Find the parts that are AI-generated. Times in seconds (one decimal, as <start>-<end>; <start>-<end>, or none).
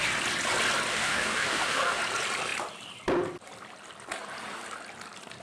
0.9-2.0